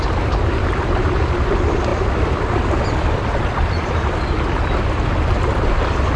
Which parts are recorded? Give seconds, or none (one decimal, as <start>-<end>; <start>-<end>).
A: 0.0-6.2